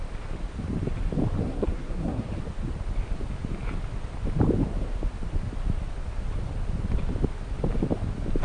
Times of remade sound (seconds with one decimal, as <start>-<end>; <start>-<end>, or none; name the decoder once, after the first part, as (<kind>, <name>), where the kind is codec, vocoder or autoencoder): 1.4-2.3 (codec, SNAC)